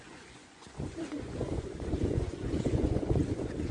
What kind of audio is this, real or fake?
fake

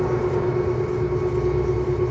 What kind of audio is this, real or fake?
real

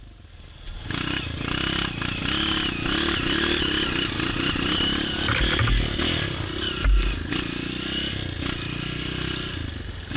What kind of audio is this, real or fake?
real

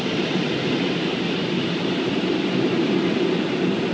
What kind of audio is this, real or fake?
real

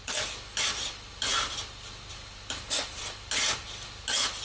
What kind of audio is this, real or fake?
real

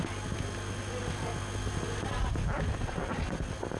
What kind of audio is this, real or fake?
real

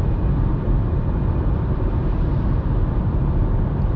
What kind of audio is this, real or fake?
fake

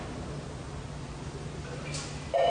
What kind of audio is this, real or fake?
real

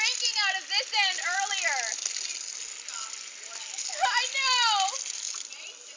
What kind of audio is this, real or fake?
real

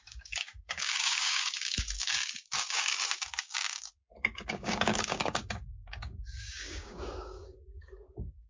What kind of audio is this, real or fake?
fake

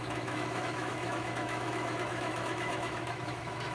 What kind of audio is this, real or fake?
fake